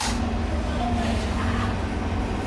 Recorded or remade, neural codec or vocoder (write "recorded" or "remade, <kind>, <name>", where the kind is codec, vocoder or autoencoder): recorded